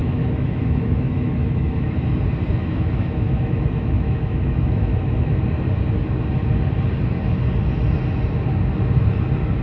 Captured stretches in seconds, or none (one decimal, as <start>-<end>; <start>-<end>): 1.9-2.6; 5.4-9.6